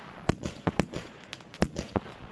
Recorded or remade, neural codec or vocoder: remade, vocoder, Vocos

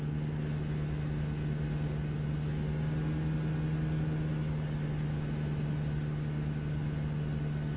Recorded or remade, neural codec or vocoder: recorded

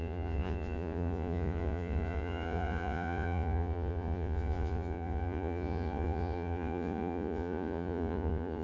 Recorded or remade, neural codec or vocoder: remade, vocoder, Vocos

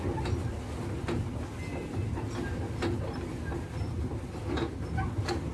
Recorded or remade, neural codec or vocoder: recorded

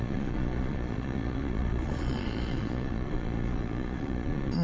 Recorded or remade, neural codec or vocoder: remade, vocoder, Vocos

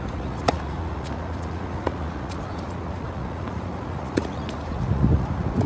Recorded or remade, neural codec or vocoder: remade, vocoder, Vocos